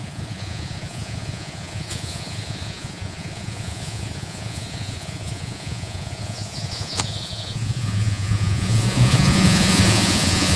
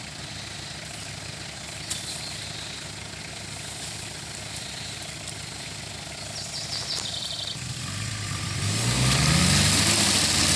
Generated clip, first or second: first